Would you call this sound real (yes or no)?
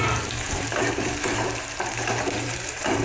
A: no